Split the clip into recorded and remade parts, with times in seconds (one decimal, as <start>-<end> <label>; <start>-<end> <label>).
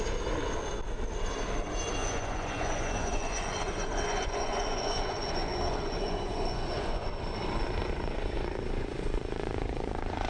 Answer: 0.0-2.0 recorded; 2.0-7.2 remade; 7.2-7.8 recorded; 7.8-10.3 remade